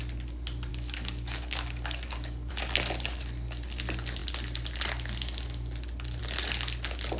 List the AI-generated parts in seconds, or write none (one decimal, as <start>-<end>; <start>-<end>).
0.7-2.5